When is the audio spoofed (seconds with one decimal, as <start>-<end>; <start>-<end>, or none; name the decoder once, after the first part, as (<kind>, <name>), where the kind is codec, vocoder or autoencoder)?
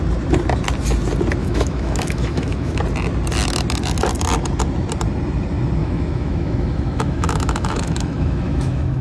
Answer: 1.4-2.8 (autoencoder, DAC-VAE); 5.8-9.0